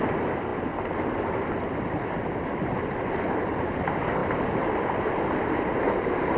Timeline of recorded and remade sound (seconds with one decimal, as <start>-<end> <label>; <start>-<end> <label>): 0.0-6.4 recorded